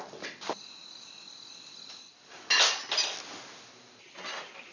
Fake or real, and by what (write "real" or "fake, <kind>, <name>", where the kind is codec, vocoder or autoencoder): real